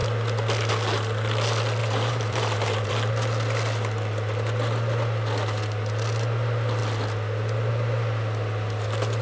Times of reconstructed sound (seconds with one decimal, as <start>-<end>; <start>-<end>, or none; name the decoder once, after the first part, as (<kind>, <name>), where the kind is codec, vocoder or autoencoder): 1.8-3.1 (vocoder, BigVGAN v2)